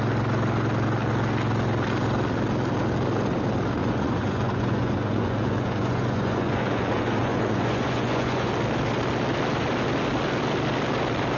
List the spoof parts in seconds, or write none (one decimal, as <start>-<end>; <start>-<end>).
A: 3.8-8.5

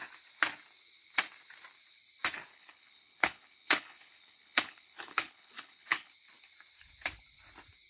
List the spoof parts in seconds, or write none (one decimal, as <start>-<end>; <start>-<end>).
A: 2.5-6.1

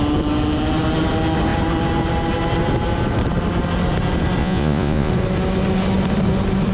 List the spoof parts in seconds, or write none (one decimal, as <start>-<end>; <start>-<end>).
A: 4.4-5.1

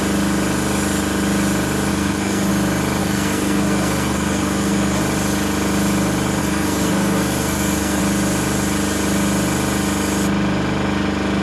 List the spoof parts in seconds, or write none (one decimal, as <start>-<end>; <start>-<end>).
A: 1.9-2.5; 3.0-5.0; 6.4-8.0

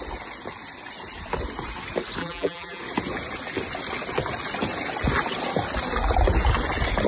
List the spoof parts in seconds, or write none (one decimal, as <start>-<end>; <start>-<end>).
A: 2.2-2.8

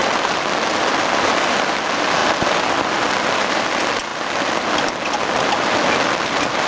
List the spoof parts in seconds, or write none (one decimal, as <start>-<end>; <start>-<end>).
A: none